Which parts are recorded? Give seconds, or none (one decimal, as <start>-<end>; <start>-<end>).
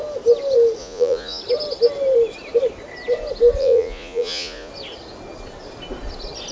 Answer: 0.0-0.8; 1.4-3.6; 4.7-6.5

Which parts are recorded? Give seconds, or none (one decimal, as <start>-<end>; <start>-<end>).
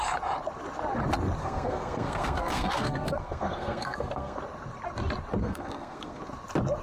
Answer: 0.0-1.4; 4.4-5.4; 6.2-6.8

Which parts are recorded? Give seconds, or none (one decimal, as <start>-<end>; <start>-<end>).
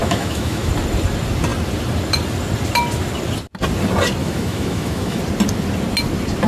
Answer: 0.7-4.2; 5.2-6.5